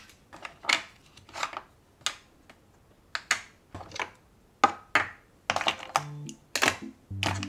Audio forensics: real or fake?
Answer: real